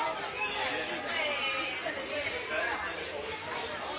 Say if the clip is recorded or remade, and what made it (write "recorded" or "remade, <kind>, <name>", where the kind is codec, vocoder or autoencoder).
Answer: recorded